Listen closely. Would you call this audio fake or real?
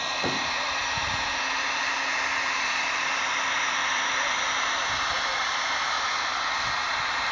fake